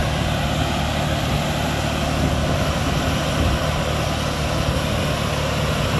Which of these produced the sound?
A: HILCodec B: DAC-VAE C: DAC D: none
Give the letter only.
D